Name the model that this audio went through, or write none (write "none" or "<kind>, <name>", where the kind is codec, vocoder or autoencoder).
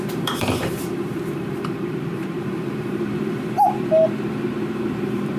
vocoder, BigVGAN v2